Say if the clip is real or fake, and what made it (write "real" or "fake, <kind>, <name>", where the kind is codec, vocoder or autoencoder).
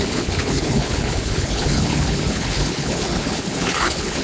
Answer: fake, codec, HILCodec